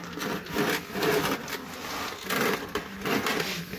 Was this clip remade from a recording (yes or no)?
no